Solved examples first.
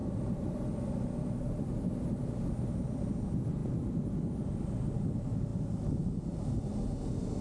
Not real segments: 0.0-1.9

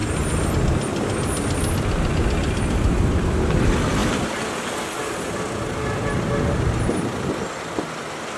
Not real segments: none

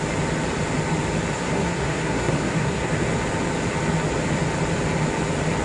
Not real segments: 1.3-2.9

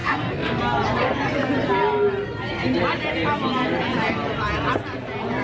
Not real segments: 0.0-0.6

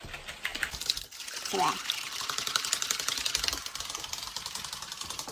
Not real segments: none

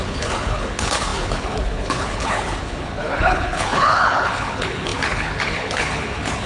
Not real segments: 0.0-6.5

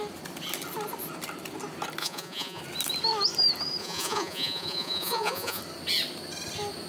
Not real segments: 2.0-2.6; 3.8-5.6

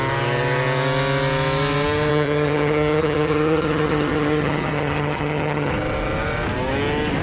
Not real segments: 2.1-5.7